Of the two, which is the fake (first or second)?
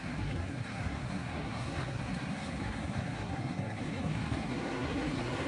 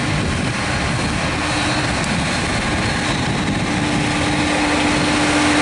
first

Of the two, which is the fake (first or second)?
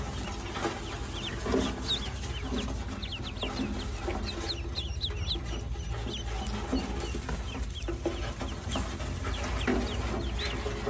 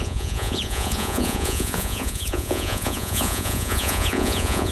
second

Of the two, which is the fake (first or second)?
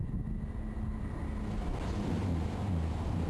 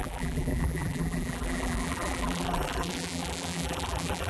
second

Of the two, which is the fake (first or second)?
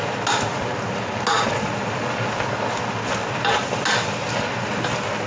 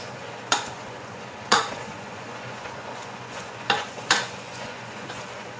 second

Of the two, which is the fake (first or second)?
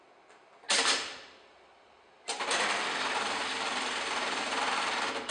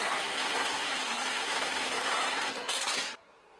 second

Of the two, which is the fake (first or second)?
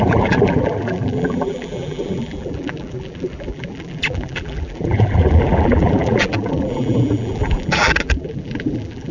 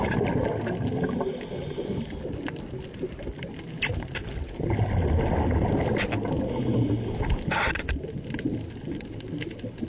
first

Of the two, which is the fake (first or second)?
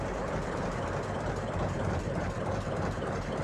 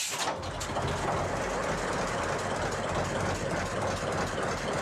first